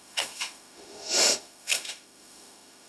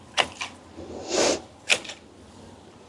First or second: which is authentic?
second